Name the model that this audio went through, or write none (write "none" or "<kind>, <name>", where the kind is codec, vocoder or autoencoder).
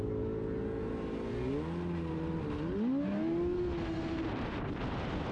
none